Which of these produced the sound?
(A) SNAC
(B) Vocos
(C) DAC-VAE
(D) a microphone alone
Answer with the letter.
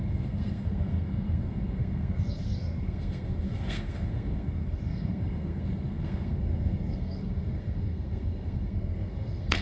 A